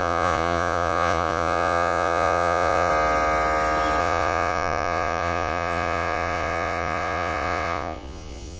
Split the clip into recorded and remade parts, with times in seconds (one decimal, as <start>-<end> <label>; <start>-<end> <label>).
0.0-2.9 remade; 2.9-4.0 recorded; 4.0-8.6 remade